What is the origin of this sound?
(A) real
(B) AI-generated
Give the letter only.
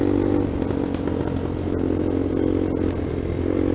A